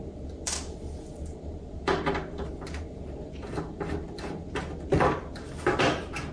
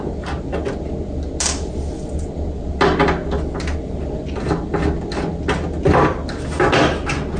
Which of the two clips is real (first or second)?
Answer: second